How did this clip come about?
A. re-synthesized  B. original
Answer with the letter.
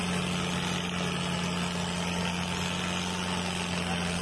B